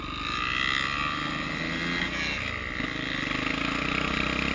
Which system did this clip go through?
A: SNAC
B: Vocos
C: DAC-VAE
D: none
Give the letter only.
D